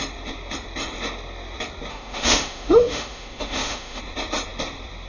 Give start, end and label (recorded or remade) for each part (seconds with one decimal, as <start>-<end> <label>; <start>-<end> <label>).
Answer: 0.0-1.9 recorded; 1.9-4.0 remade; 4.0-5.1 recorded